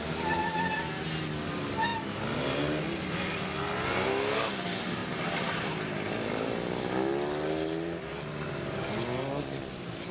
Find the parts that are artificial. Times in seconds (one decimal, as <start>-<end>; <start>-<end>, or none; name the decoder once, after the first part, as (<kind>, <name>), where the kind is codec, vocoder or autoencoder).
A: none